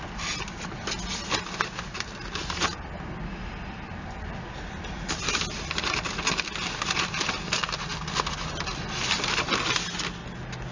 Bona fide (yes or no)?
yes